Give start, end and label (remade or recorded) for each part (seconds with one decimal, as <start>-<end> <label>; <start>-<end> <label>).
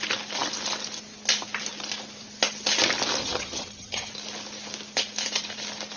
0.0-3.2 recorded; 3.2-4.1 remade; 4.1-6.0 recorded